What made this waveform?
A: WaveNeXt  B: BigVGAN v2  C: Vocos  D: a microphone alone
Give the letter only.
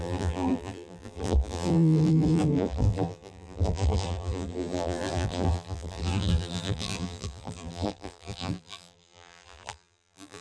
B